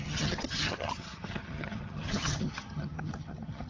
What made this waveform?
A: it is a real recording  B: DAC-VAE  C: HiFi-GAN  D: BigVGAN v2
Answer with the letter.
C